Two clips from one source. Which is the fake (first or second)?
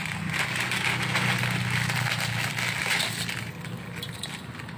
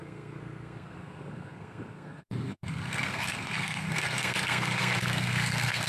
second